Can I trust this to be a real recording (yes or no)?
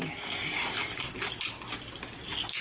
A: yes